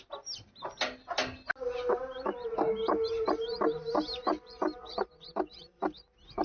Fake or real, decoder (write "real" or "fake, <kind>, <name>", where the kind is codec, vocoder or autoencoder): real